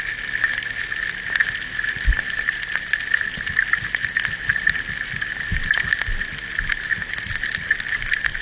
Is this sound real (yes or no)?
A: yes